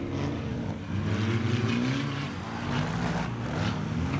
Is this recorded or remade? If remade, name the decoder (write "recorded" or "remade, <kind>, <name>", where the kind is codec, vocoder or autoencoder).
recorded